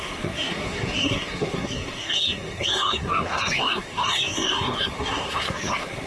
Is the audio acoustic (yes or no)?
no